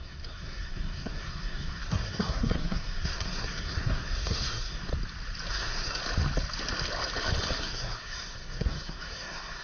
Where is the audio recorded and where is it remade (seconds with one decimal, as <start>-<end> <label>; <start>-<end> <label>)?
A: 0.0-4.9 remade; 4.9-5.5 recorded; 5.5-6.0 remade; 6.0-7.6 recorded; 7.6-9.6 remade